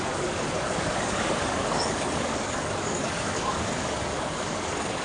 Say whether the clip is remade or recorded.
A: remade